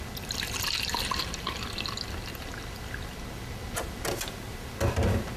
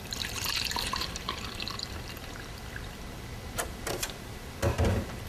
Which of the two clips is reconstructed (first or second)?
second